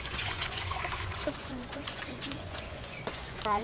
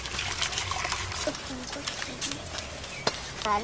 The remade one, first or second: first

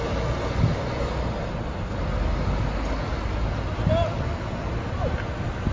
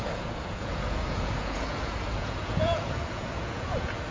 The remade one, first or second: second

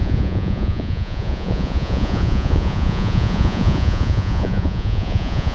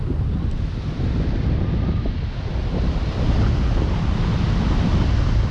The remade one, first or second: first